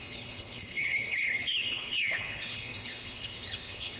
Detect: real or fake fake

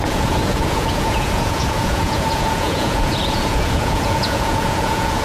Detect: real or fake fake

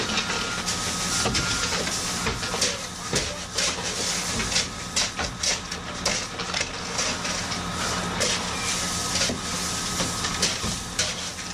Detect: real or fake real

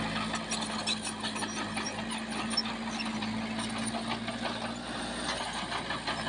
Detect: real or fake real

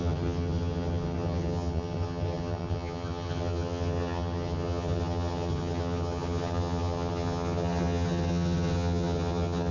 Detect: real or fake fake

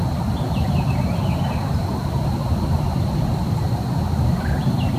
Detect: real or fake real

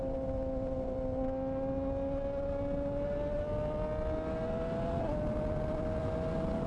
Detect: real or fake real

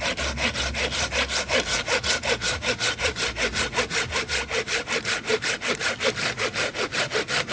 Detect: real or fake real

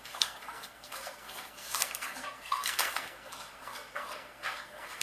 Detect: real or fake fake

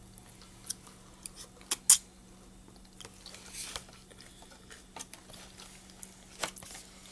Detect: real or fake real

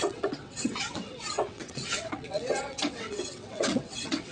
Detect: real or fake fake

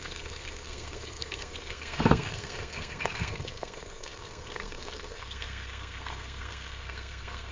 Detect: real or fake fake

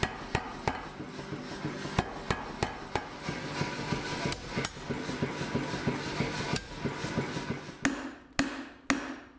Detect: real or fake real